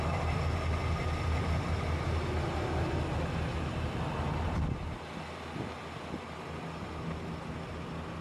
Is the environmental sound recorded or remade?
recorded